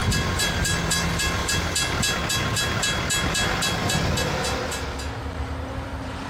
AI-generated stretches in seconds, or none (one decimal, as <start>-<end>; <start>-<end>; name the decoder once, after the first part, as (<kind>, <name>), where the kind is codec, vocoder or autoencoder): 0.0-1.4 (vocoder, BigVGAN v2); 5.2-6.3

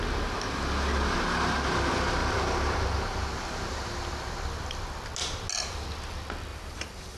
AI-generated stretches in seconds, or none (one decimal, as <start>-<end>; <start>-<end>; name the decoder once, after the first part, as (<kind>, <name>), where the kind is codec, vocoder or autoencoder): 2.2-3.3 (vocoder, BigVGAN v2); 6.5-7.2

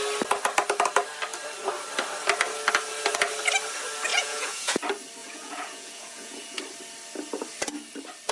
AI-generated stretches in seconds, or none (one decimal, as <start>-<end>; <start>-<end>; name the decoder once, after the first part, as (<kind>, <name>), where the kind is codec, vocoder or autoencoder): 4.1-4.8 (vocoder, Vocos); 5.2-6.6

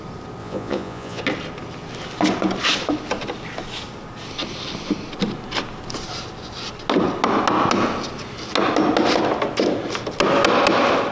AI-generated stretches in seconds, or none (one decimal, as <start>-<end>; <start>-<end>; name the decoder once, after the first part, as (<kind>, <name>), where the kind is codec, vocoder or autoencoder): 0.4-1.2 (vocoder, Vocos)

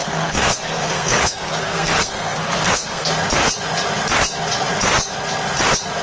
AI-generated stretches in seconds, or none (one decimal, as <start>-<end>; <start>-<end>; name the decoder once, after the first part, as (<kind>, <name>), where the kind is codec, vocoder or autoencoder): 0.0-3.1 (codec, SNAC)

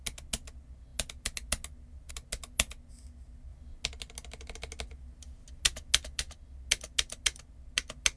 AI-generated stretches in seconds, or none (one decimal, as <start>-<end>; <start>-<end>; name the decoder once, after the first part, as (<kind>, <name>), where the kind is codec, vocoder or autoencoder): none

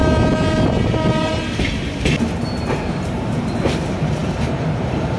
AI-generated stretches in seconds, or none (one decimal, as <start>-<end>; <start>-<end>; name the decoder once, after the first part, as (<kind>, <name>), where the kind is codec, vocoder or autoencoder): 3.1-5.2 (vocoder, BigVGAN v2)

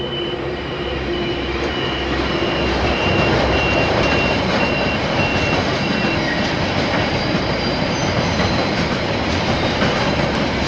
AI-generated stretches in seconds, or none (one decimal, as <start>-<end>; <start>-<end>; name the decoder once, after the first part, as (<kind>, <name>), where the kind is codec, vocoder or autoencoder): 0.0-1.7 (vocoder, BigVGAN v2); 2.3-5.0; 6.8-10.7